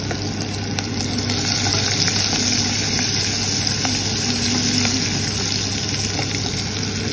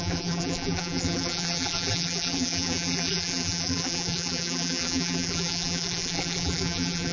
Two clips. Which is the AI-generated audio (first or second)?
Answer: second